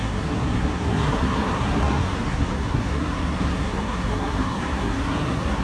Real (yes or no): no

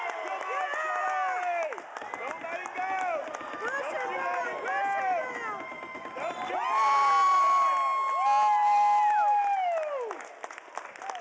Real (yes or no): yes